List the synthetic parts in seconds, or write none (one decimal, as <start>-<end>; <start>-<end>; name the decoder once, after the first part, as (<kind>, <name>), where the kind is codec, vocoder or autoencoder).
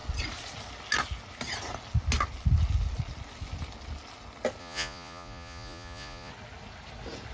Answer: 4.6-6.3 (vocoder, Vocos)